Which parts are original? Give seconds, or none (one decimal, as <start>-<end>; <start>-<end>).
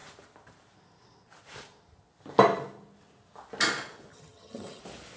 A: 0.0-4.1; 4.8-5.2